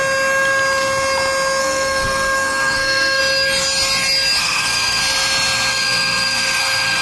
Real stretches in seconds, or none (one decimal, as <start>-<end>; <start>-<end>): 0.0-1.6; 3.2-4.4; 5.0-5.7